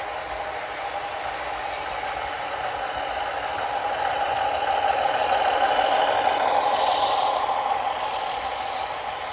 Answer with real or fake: real